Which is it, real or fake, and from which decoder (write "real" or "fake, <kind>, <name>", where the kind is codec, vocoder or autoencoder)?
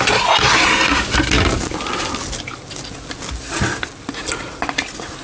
real